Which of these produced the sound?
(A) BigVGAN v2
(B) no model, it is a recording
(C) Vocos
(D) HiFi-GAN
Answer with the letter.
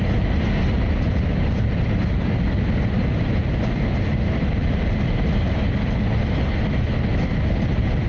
B